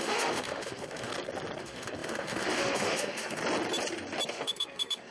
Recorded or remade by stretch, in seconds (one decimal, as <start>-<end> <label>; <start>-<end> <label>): 0.0-1.1 remade; 1.1-1.6 recorded; 1.6-3.4 remade; 3.4-4.3 recorded; 4.3-5.1 remade